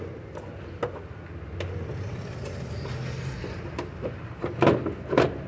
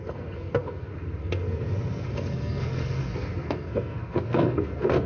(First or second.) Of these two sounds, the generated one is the second